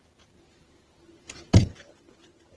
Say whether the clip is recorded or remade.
remade